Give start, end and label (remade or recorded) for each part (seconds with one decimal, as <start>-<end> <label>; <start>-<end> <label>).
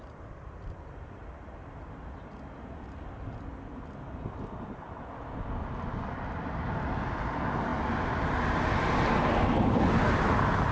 0.0-10.7 recorded